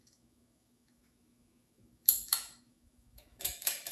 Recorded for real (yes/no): no